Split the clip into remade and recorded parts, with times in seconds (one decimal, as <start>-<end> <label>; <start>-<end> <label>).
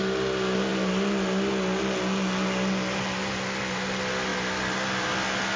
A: 0.0-5.6 recorded